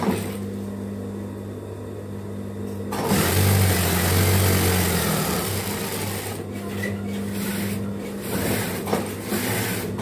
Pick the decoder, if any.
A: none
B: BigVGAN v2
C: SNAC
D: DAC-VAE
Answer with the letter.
A